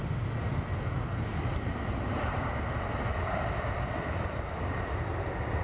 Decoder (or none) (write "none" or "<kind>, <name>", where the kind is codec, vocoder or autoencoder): none